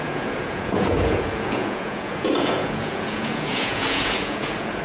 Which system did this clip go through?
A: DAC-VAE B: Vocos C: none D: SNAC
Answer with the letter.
B